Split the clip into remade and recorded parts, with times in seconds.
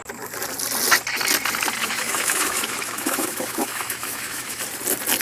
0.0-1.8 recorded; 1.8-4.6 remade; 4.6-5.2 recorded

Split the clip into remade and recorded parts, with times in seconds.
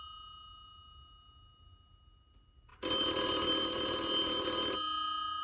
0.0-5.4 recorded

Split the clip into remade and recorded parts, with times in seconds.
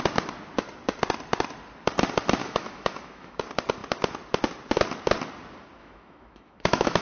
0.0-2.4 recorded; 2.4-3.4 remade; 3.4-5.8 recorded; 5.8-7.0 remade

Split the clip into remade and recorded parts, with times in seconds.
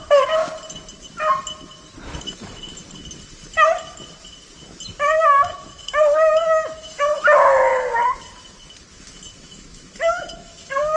0.0-0.4 remade; 0.4-2.2 recorded; 2.2-2.7 remade; 2.7-5.2 recorded; 5.2-7.7 remade; 7.7-9.4 recorded; 9.4-11.0 remade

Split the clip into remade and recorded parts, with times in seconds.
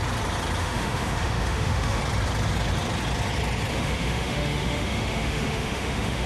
0.0-0.6 recorded; 0.6-2.0 remade; 2.0-3.7 recorded; 3.7-6.3 remade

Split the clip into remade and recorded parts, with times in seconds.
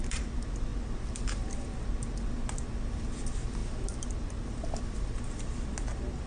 0.0-6.3 recorded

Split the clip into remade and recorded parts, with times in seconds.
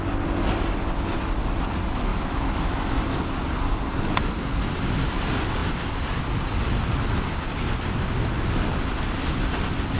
0.0-2.1 recorded; 2.1-3.0 remade; 3.0-10.0 recorded